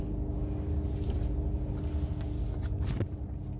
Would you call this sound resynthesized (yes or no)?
no